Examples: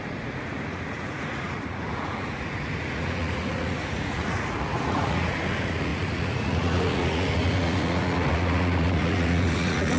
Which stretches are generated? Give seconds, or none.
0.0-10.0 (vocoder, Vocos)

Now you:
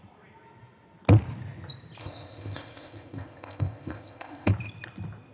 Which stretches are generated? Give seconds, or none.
2.0-4.5 (codec, ZipCodec)